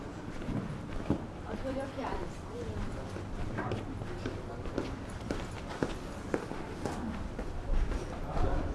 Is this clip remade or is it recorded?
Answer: remade